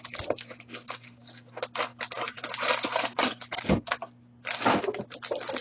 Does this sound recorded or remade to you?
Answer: recorded